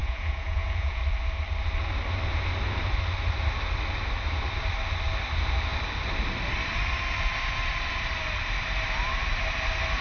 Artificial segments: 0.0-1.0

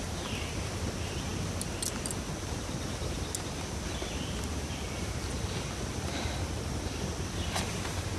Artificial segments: none

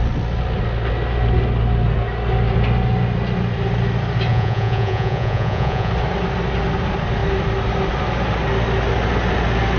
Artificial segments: 4.3-5.9